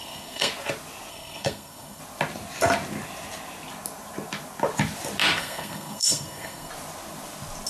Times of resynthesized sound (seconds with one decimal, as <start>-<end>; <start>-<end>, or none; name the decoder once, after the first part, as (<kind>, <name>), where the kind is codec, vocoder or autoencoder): 0.0-0.5 (codec, SNAC); 1.1-2.0; 5.4-6.7